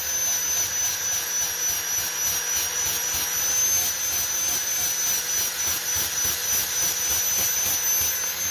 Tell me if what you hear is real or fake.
real